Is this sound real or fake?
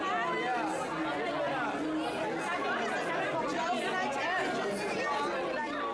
real